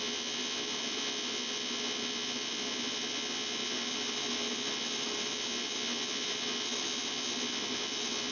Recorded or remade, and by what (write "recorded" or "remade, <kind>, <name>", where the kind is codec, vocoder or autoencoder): recorded